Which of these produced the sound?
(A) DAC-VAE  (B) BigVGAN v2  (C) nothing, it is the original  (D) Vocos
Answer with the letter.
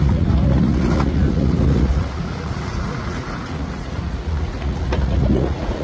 D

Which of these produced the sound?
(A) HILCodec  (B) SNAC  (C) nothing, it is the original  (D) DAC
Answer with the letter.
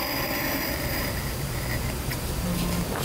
C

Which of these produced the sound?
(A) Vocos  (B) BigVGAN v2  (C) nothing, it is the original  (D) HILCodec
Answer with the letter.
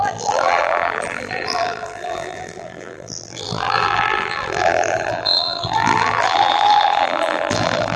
B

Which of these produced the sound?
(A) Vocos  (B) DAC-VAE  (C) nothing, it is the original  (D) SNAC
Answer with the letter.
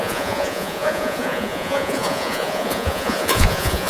A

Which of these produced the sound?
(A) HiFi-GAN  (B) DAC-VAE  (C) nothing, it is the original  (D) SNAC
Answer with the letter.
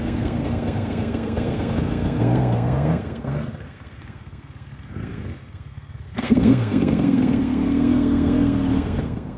D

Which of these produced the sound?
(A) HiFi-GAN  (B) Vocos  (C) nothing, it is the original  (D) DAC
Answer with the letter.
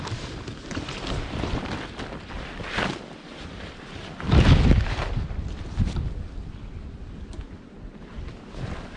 C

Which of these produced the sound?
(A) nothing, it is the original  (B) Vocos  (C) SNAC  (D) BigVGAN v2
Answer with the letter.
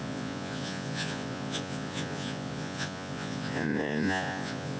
B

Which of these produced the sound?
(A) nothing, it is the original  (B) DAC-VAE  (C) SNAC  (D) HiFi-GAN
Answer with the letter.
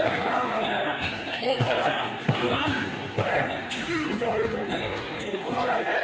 C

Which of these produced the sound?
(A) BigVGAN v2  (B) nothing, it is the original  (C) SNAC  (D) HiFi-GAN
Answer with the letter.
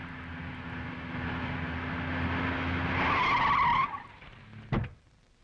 B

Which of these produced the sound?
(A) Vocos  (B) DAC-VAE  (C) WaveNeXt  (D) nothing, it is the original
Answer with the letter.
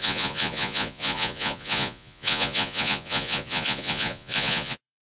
A